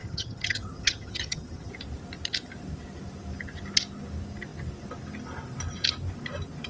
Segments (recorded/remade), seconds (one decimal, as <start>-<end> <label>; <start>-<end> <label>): 0.0-1.7 remade; 1.7-6.7 recorded